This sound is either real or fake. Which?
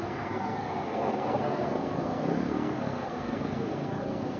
fake